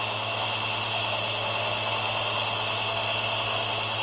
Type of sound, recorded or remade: recorded